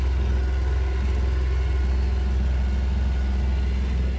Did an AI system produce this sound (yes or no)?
no